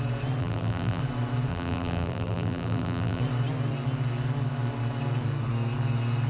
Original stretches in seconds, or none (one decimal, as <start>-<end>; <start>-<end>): 0.0-0.4; 1.0-1.5; 3.2-6.3